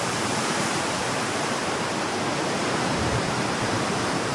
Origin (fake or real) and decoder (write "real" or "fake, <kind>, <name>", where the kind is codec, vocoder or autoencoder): fake, vocoder, BigVGAN v2